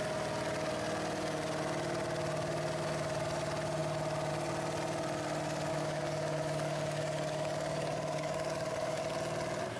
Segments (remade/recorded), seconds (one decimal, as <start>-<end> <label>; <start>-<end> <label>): 0.0-5.7 recorded; 5.7-9.0 remade; 9.0-9.8 recorded